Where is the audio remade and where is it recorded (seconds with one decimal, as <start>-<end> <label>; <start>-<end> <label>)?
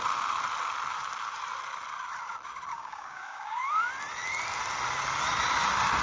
0.0-2.7 recorded; 2.7-3.6 remade; 3.6-6.0 recorded